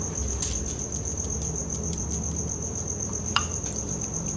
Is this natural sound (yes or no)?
no